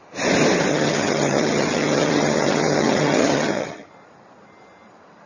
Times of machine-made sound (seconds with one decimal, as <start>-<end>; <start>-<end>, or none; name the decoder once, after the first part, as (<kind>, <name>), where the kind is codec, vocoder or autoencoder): 0.7-3.9 (vocoder, HiFi-GAN)